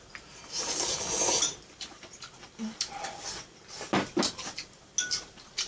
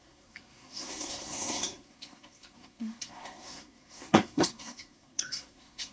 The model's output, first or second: second